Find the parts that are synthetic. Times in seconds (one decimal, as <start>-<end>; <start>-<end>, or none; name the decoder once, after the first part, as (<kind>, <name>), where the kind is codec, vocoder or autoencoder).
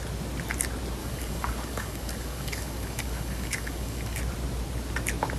1.0-4.2 (codec, DAC)